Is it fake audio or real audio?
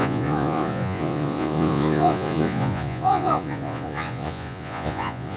fake